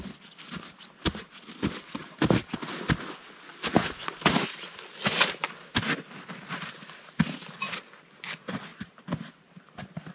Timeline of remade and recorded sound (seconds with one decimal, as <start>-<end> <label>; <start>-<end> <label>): 0.0-8.7 recorded; 8.7-10.1 remade